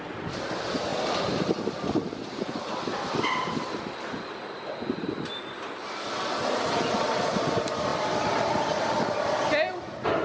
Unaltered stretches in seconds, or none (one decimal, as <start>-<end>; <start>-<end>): 0.0-7.9; 9.2-10.2